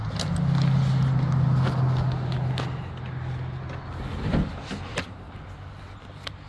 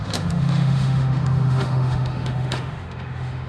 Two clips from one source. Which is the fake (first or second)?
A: second